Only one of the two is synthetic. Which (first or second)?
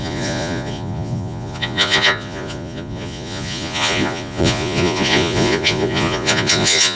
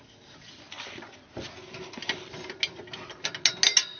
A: first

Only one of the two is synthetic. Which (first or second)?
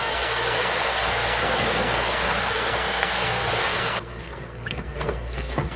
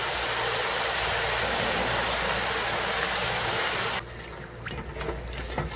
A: first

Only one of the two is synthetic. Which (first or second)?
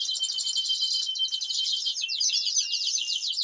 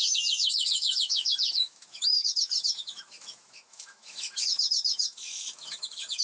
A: second